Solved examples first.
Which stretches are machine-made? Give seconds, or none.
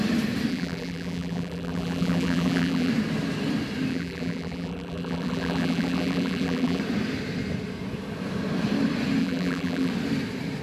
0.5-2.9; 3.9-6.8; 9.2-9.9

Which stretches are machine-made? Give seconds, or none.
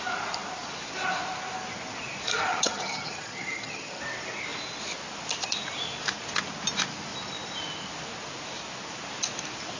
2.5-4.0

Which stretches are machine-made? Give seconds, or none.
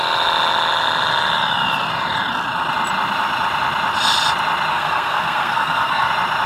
4.7-6.1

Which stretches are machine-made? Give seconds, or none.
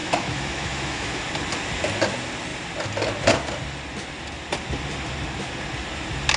0.0-1.2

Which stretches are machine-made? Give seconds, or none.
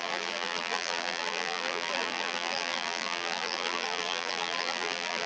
0.0-5.3